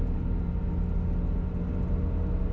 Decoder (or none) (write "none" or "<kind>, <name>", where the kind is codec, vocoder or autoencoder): none